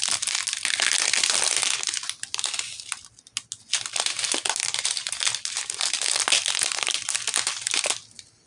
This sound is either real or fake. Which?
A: real